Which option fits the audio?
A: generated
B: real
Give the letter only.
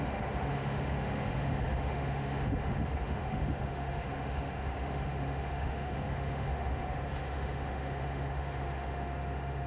A